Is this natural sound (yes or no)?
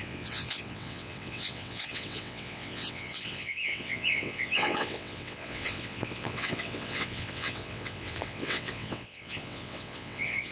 no